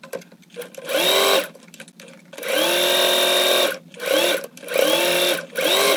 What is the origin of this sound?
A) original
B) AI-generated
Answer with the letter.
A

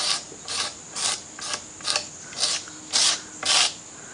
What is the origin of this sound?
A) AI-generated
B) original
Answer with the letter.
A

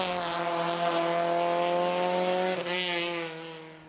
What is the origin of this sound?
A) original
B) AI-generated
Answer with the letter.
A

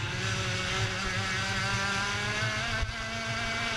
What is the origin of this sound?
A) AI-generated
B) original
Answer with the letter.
B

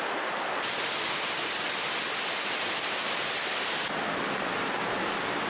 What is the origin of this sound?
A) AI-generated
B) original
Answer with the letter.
B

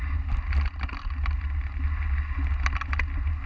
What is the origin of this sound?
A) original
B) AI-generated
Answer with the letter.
A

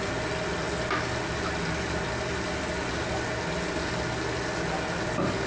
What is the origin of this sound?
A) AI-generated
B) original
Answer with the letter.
B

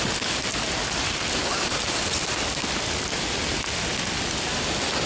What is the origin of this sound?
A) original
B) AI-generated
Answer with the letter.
A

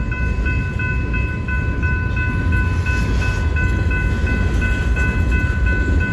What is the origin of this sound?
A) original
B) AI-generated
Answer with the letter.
A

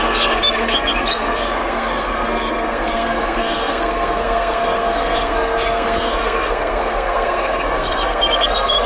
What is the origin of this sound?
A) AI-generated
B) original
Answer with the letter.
A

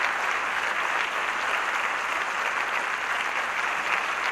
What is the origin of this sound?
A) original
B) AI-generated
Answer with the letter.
A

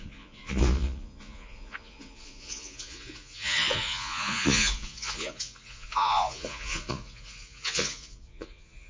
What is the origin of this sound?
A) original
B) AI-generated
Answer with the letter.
B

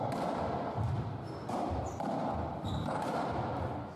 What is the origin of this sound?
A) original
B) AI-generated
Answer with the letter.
A